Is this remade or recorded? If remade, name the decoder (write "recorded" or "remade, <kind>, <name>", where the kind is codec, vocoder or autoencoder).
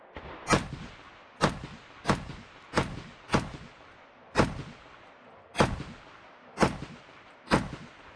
recorded